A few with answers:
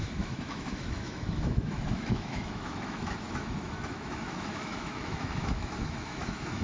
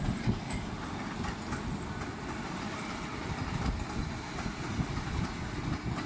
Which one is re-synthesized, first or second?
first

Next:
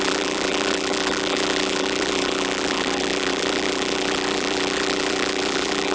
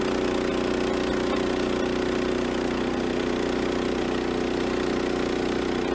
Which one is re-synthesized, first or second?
first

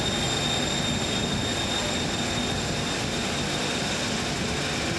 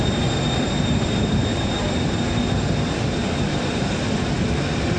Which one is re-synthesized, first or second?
second